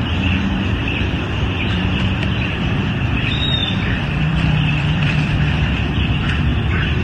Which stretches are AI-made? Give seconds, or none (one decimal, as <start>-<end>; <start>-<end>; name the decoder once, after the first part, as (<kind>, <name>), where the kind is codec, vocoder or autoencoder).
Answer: 0.0-7.0 (vocoder, BigVGAN v2)